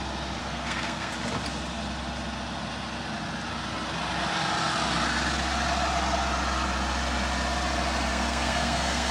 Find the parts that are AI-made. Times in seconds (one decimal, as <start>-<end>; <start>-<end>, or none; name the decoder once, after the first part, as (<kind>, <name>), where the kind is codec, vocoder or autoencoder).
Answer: 0.4-1.1 (codec, SNAC); 8.1-9.1